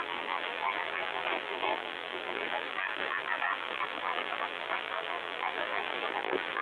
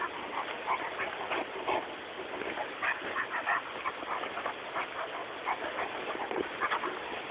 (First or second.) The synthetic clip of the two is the first